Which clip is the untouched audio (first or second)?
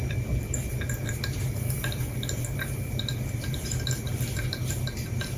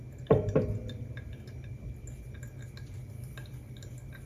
second